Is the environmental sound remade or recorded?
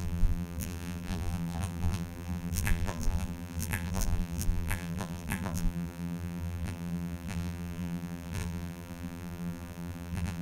remade